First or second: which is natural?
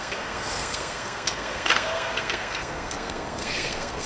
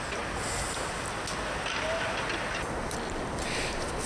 second